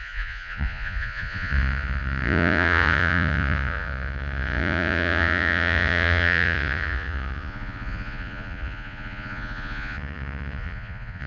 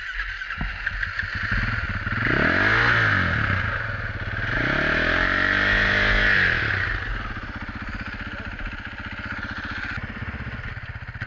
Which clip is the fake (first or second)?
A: first